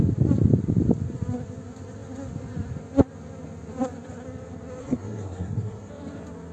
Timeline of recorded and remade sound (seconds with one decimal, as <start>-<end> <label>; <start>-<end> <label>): 0.0-4.8 recorded; 4.8-5.9 remade; 5.9-6.5 recorded